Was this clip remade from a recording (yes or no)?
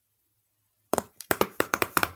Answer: yes